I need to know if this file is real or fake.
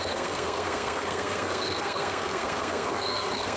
fake